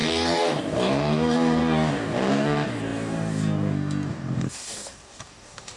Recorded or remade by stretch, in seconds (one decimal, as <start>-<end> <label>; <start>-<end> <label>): 0.0-5.8 remade